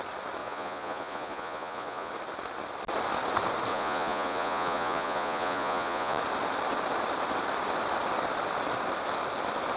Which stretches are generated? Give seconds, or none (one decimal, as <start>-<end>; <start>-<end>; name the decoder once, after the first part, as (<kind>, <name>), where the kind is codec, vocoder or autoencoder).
0.4-2.1 (vocoder, Vocos); 3.7-6.2